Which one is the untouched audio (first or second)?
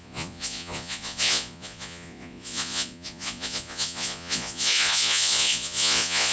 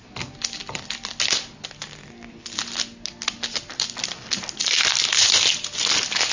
second